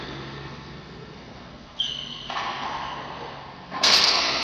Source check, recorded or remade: remade